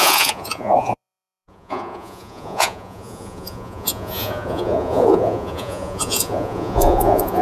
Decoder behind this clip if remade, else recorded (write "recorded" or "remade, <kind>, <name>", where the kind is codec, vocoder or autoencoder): remade, vocoder, Vocos